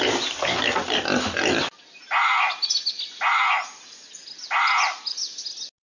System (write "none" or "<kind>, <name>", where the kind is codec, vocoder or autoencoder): none